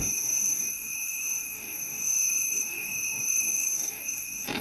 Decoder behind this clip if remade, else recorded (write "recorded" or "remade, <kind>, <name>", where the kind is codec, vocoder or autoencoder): remade, codec, DAC